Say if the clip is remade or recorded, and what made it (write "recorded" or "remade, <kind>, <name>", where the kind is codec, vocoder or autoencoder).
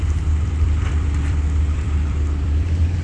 remade, vocoder, BigVGAN v2